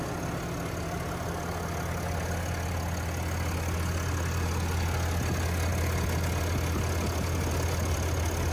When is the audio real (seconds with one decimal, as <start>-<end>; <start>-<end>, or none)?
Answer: 0.0-8.5